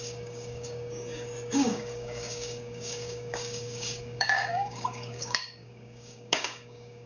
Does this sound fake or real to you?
fake